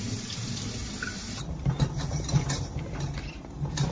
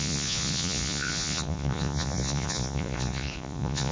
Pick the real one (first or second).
first